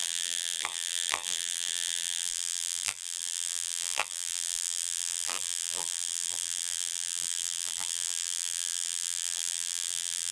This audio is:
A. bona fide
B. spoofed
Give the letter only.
B